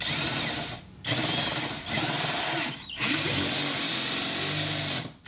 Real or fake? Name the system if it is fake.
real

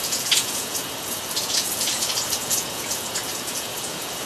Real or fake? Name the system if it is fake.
fake, vocoder, Vocos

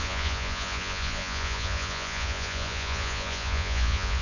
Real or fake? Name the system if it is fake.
fake, vocoder, Vocos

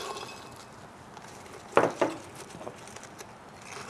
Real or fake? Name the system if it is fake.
real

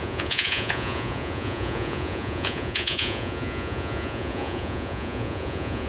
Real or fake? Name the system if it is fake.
fake, vocoder, Vocos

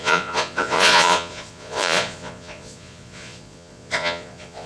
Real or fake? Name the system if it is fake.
fake, vocoder, Vocos